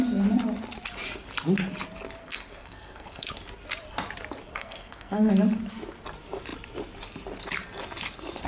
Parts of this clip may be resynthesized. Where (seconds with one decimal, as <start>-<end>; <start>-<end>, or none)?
2.2-3.3; 4.5-5.3